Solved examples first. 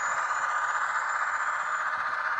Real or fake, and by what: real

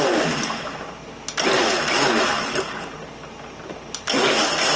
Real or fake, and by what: real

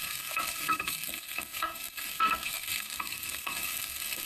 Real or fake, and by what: fake, codec, SNAC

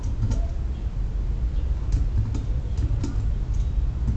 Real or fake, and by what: real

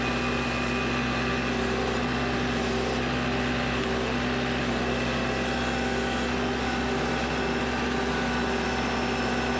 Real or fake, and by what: real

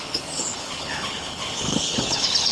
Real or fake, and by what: fake, codec, HILCodec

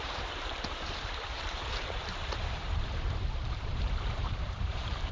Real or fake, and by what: fake, vocoder, BigVGAN v2